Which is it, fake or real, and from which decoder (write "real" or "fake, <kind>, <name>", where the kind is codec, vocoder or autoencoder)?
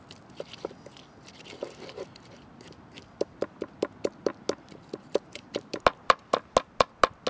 real